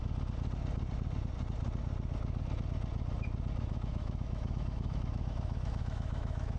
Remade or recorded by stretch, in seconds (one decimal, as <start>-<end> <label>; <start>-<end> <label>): 0.0-3.6 recorded; 3.6-6.6 remade

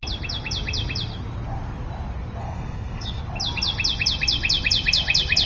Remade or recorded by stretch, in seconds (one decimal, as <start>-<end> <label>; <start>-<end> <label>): 0.0-2.4 recorded; 2.4-3.2 remade; 3.2-5.5 recorded

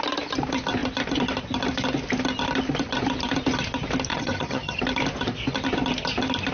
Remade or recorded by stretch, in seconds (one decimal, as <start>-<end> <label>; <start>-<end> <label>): 0.0-4.1 recorded; 4.1-4.8 remade; 4.8-6.5 recorded

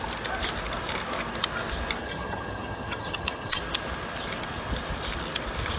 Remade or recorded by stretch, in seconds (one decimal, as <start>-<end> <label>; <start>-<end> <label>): 0.0-2.0 recorded; 2.0-3.6 remade; 3.6-5.8 recorded

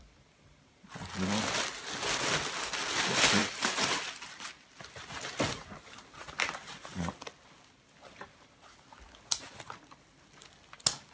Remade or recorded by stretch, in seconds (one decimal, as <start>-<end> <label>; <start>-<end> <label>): 0.0-11.1 recorded

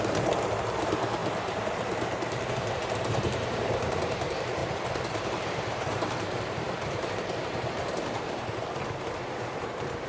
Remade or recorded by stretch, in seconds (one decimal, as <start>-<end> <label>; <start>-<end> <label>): 0.0-4.6 remade; 4.6-5.3 recorded; 5.3-10.1 remade